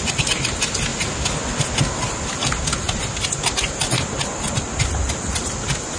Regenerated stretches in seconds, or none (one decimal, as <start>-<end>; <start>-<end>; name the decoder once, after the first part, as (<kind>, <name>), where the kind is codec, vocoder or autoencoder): none